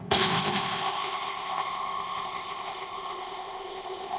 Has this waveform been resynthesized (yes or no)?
yes